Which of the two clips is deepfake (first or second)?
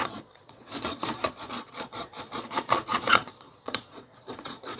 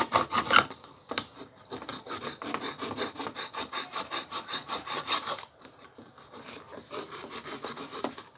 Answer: first